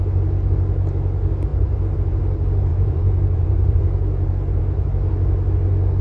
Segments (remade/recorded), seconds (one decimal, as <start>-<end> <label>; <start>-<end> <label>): 0.0-1.5 recorded; 1.5-2.2 remade; 2.2-2.7 recorded; 2.7-4.6 remade; 4.6-6.0 recorded